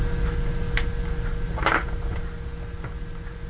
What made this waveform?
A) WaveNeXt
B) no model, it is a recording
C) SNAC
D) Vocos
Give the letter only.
B